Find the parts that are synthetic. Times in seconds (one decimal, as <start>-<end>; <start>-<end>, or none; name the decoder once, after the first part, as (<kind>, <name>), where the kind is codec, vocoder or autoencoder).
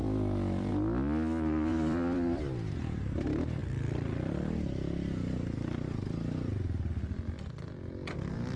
0.0-0.7 (vocoder, BigVGAN v2); 1.7-2.8